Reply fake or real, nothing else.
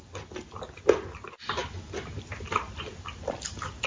real